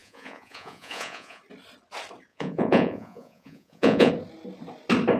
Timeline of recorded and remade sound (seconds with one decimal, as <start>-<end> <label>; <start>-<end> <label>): 0.0-1.4 remade; 1.4-2.3 recorded; 2.3-4.1 remade; 4.1-5.2 recorded